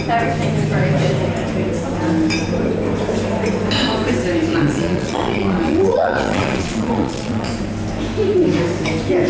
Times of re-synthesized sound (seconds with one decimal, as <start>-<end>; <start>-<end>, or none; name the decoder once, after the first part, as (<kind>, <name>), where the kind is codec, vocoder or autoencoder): 4.5-7.5 (vocoder, Vocos)